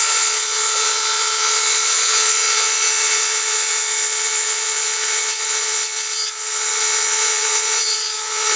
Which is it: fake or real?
fake